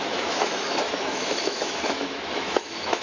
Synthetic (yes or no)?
yes